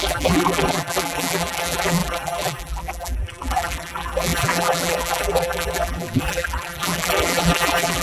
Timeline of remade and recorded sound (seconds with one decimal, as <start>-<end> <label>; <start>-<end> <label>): 0.0-8.0 remade